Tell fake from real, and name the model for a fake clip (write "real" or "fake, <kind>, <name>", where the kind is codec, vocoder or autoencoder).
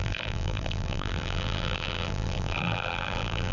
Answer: fake, vocoder, BigVGAN v2